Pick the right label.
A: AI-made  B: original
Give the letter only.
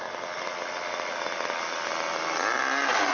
B